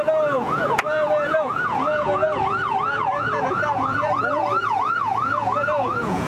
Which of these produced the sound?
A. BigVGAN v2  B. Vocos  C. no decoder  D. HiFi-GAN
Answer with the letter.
B